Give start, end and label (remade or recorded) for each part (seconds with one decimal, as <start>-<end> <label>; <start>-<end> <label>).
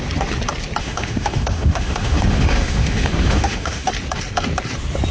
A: 0.0-0.8 recorded; 0.8-3.9 remade; 3.9-5.1 recorded